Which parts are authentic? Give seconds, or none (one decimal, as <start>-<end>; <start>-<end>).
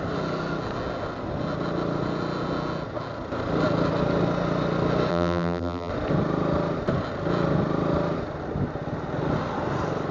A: 0.0-5.1; 5.9-10.1